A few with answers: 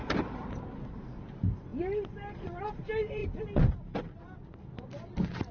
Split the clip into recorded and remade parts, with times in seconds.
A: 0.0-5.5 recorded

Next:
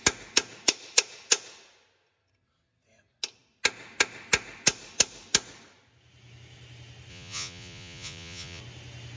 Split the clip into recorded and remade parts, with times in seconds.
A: 0.0-7.1 recorded; 7.1-8.6 remade; 8.6-9.2 recorded

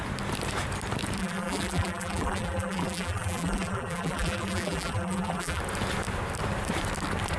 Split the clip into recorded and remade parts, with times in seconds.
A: 0.0-1.2 recorded; 1.2-5.6 remade; 5.6-7.4 recorded

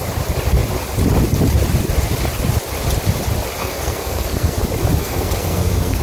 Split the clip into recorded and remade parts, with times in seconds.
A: 0.0-3.6 recorded; 3.6-4.6 remade; 4.6-5.0 recorded; 5.0-6.0 remade

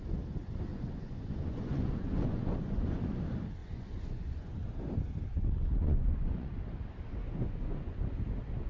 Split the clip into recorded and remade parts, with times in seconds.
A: 0.0-0.7 recorded; 0.7-3.2 remade; 3.2-3.6 recorded; 3.6-4.6 remade; 4.6-5.8 recorded; 5.8-6.5 remade; 6.5-7.2 recorded; 7.2-8.0 remade; 8.0-8.7 recorded

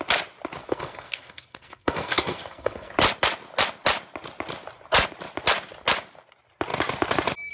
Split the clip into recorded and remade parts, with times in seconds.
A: 0.0-0.6 recorded; 0.6-2.9 remade; 2.9-7.5 recorded